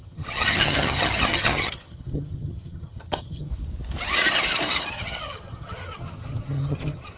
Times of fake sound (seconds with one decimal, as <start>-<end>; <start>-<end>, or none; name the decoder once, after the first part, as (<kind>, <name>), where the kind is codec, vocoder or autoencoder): 0.0-3.5 (vocoder, HiFi-GAN); 4.9-7.2